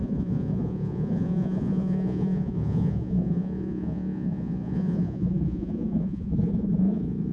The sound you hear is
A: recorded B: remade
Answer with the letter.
B